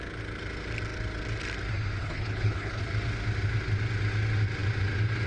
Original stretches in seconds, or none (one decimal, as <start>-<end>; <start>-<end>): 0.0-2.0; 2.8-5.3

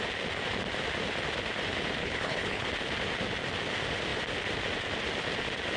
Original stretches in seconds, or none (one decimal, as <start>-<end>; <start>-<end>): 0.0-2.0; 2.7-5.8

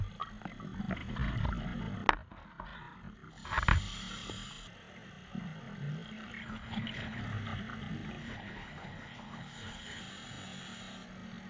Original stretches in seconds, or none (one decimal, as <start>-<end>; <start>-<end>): 0.0-6.4; 7.2-8.2; 10.0-11.5